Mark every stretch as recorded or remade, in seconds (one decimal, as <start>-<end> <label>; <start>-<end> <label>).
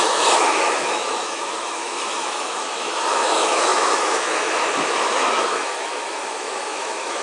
0.0-7.2 remade